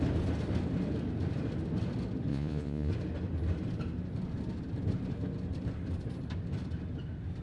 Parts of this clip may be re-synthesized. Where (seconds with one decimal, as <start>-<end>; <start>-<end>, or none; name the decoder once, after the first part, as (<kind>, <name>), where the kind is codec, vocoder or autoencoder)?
2.3-2.9 (vocoder, Vocos)